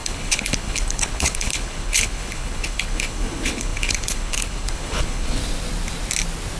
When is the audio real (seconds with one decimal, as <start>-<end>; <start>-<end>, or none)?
5.4-6.6